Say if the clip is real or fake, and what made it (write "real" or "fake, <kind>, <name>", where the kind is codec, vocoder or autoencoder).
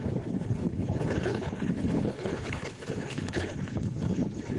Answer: fake, codec, HILCodec